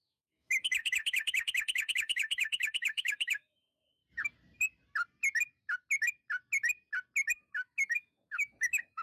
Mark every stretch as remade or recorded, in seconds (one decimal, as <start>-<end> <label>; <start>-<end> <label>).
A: 0.0-4.0 remade; 4.0-7.3 recorded; 7.3-9.0 remade